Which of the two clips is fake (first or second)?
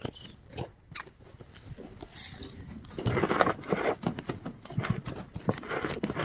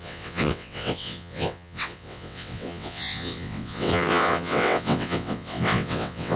second